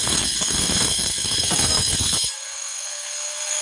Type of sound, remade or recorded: remade